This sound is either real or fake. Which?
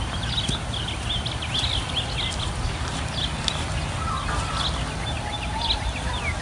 real